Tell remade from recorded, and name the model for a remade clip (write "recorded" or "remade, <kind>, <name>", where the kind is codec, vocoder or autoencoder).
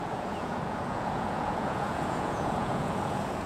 remade, vocoder, Vocos